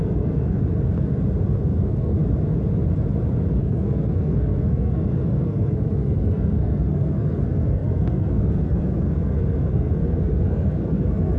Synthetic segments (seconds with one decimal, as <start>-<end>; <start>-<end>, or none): 0.0-0.6; 1.6-2.2; 3.6-11.4